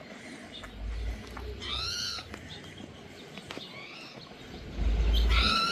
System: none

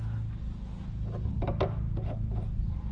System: none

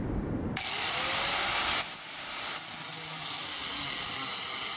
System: none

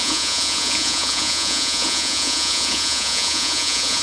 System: vocoder, Vocos